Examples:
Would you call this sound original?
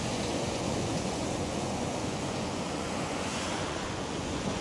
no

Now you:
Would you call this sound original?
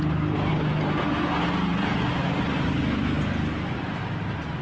yes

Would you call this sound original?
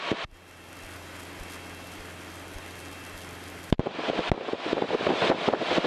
yes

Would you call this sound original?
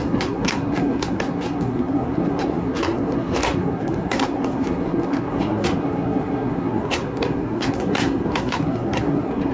no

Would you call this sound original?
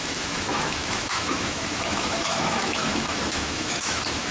no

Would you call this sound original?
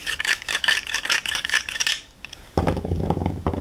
no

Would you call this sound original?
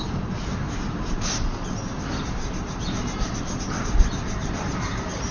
yes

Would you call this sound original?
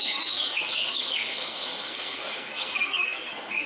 no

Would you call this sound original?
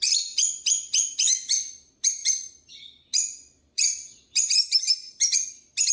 yes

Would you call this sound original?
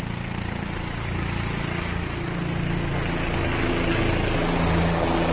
yes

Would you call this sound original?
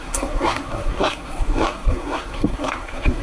no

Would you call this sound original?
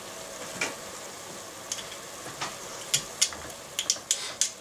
yes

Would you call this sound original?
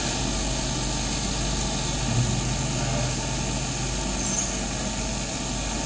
yes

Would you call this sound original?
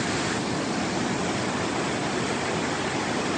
yes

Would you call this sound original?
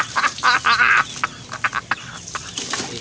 no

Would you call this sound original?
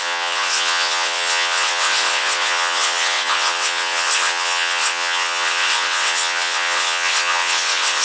no